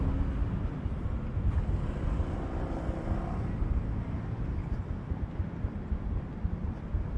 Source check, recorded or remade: recorded